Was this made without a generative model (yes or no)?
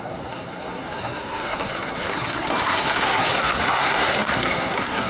no